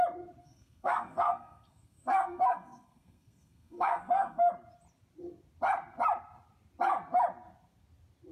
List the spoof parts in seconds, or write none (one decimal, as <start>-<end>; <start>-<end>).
0.4-4.5